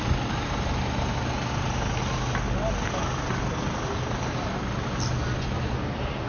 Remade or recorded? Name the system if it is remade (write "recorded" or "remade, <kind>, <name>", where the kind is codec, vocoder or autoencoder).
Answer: recorded